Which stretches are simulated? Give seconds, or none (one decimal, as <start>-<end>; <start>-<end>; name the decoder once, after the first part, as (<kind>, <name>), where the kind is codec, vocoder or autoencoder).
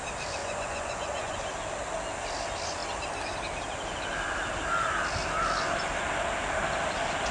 0.4-1.4 (vocoder, Vocos)